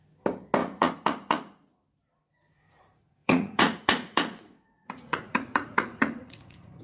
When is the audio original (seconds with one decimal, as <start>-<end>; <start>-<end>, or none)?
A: 0.0-0.6; 1.7-3.2